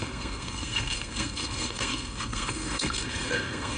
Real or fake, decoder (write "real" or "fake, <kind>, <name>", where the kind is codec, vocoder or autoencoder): fake, codec, SNAC